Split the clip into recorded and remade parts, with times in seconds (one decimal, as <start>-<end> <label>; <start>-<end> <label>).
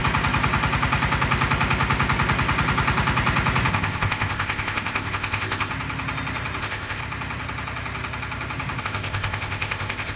0.0-3.7 recorded; 3.7-5.7 remade; 5.7-6.6 recorded; 6.6-7.0 remade; 7.0-8.8 recorded; 8.8-10.2 remade